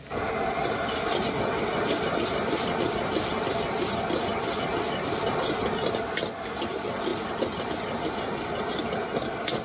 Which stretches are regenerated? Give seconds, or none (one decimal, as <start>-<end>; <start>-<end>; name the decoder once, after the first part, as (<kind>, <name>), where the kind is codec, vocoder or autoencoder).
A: none